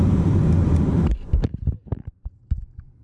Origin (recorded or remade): remade